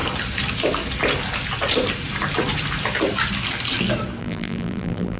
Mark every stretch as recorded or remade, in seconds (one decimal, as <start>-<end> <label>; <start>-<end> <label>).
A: 0.0-4.2 recorded; 4.2-5.2 remade